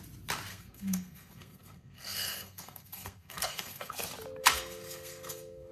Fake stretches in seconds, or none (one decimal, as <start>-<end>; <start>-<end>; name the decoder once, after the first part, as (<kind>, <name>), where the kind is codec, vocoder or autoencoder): 0.5-3.9 (codec, SNAC); 4.4-5.7